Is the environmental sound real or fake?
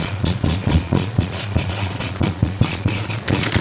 fake